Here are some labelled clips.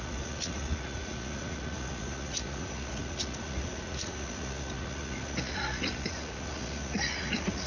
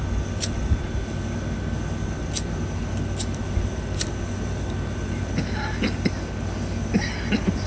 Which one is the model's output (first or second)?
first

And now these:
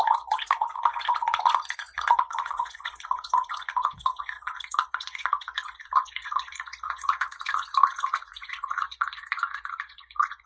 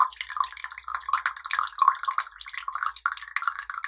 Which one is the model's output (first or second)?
first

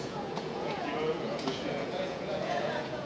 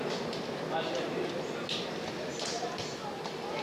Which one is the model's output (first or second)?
first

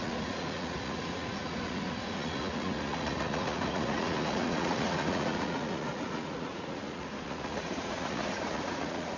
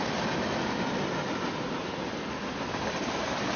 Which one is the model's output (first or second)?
first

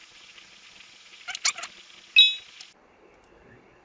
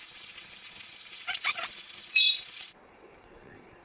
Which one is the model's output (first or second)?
second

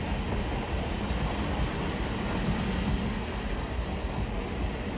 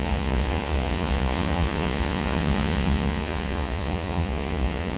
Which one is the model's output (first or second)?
second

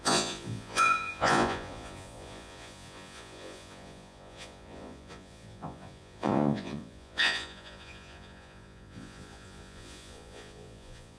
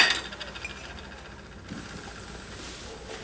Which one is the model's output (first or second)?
first